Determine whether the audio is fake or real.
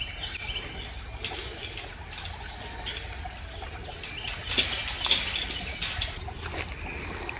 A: real